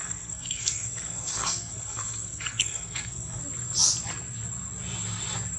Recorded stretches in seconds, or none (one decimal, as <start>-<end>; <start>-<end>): 3.4-5.6